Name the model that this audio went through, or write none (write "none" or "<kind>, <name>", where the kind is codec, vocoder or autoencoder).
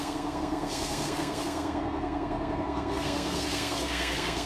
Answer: codec, SNAC